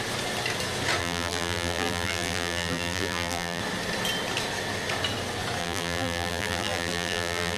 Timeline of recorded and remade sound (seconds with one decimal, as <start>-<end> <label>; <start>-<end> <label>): 0.0-1.0 recorded; 1.0-3.6 remade; 3.6-5.6 recorded; 5.6-7.6 remade